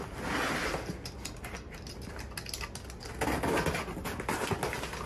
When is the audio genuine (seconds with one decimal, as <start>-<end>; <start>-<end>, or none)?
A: 0.0-5.1